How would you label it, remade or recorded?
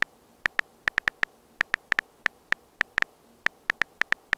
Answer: recorded